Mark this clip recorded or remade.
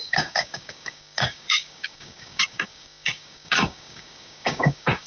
remade